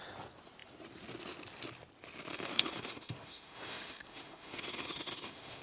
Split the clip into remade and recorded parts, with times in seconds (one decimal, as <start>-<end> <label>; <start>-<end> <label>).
0.0-2.3 recorded; 2.3-5.6 remade